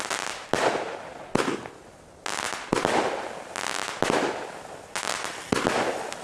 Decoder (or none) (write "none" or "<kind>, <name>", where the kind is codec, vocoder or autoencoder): none